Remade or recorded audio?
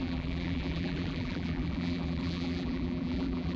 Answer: remade